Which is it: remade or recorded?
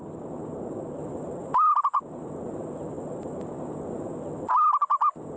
recorded